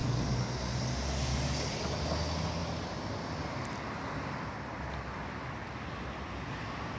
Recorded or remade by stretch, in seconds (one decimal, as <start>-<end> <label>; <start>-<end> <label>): 0.0-0.5 remade; 0.5-1.3 recorded; 1.3-2.0 remade; 2.0-7.0 recorded